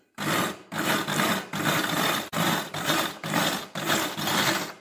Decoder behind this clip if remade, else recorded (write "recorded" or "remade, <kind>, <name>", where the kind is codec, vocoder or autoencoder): remade, vocoder, BigVGAN v2